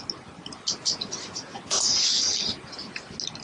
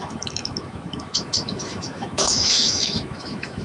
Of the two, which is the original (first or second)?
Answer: first